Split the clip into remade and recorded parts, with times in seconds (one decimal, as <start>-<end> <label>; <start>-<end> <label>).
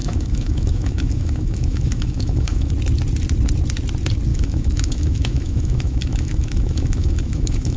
0.0-2.7 remade; 2.7-4.3 recorded; 4.3-7.8 remade